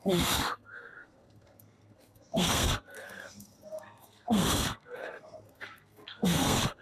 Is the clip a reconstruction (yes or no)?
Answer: yes